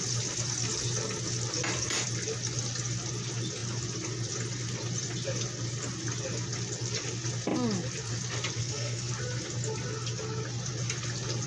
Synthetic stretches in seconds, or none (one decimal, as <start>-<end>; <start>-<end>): 8.6-9.1